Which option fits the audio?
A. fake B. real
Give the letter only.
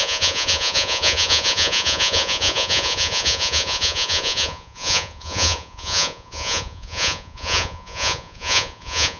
A